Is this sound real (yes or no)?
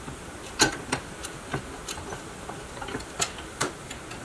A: yes